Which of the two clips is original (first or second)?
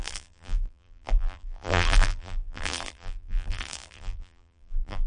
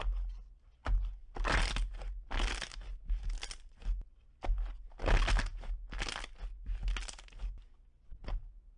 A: second